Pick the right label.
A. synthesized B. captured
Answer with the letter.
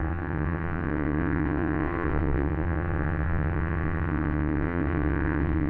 A